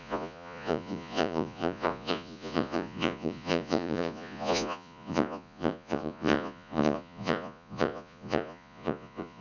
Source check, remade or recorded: remade